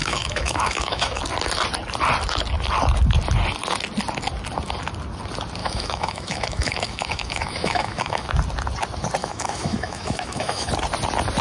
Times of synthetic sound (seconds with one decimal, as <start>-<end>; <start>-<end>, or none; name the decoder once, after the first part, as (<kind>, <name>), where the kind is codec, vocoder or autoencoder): 0.0-1.2 (autoencoder, DAC-VAE); 5.6-8.3; 9.2-10.7

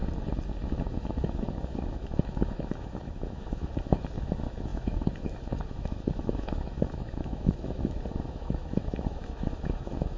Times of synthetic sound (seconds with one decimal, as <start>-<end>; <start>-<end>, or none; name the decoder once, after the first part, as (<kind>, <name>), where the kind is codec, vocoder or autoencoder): 0.7-10.2 (autoencoder, DAC-VAE)

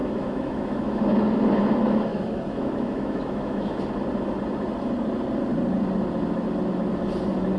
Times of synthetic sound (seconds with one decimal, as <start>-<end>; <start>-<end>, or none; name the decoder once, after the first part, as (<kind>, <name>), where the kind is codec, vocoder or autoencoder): 0.0-1.0 (autoencoder, DAC-VAE); 2.1-3.8

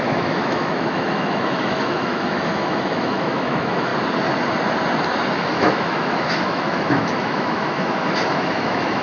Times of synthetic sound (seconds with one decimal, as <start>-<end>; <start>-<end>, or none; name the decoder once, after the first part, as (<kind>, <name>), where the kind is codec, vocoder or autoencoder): 0.0-3.9 (autoencoder, DAC-VAE); 5.4-9.0

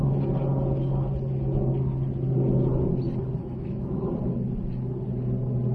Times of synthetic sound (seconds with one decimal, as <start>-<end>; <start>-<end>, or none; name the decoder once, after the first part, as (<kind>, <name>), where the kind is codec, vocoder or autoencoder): 3.4-4.0 (autoencoder, DAC-VAE)

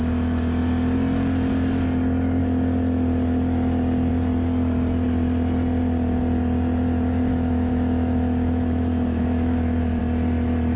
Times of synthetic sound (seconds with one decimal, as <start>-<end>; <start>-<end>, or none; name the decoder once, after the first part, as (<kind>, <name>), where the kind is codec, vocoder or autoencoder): 7.3-10.0 (autoencoder, DAC-VAE)

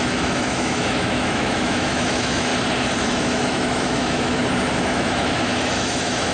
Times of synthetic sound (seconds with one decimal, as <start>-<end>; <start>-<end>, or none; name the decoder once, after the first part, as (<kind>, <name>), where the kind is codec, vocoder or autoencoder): 0.0-2.5 (autoencoder, DAC-VAE); 3.0-4.4; 4.9-6.3